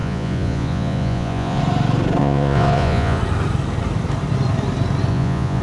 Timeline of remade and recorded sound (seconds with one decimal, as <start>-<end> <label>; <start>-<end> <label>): 0.0-1.6 remade; 1.6-2.2 recorded; 2.2-3.2 remade; 3.2-5.1 recorded; 5.1-5.6 remade